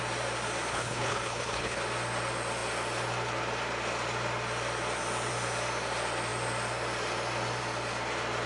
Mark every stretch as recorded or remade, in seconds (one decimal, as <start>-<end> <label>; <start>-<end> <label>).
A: 0.0-0.7 recorded; 0.7-1.8 remade; 1.8-8.5 recorded